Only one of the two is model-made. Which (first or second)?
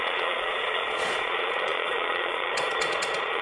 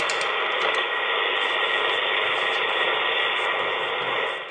first